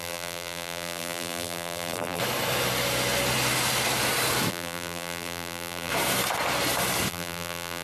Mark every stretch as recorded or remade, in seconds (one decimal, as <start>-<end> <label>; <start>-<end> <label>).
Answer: 0.0-2.2 remade; 2.2-4.5 recorded; 4.5-5.9 remade; 5.9-7.1 recorded; 7.1-7.8 remade